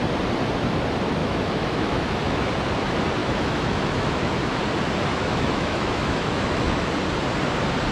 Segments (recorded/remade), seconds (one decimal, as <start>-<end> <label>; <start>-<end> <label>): 0.0-1.2 recorded; 1.2-2.5 remade; 2.5-3.2 recorded; 3.2-4.6 remade; 4.6-5.1 recorded; 5.1-6.9 remade; 6.9-7.9 recorded